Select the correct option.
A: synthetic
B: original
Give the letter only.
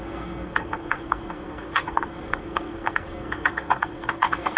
A